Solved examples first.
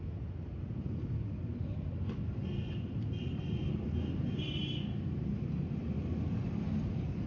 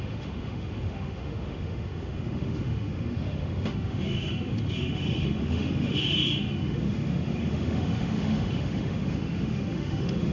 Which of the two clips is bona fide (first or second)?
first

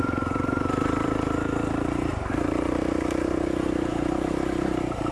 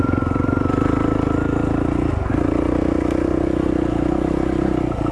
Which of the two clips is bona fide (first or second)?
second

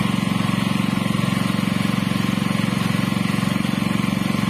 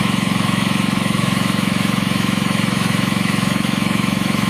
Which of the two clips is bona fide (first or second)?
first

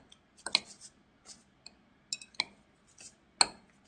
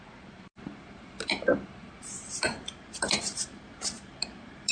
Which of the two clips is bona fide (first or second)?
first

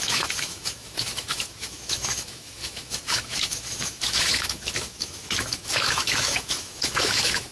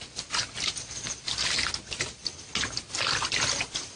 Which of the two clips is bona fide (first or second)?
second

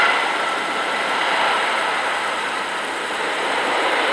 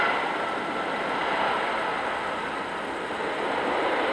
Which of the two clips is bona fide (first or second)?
second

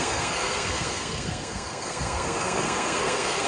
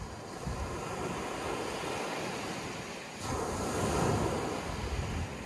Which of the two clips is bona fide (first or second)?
second